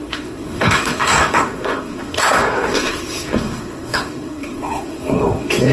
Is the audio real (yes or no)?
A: no